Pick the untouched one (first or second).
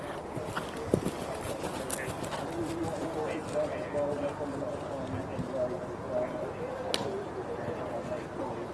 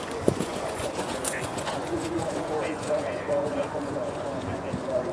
first